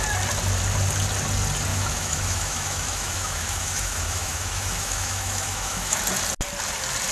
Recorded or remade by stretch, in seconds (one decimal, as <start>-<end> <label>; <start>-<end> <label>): 0.0-1.7 recorded; 1.7-6.0 remade; 6.0-7.1 recorded